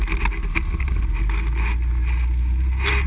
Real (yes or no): yes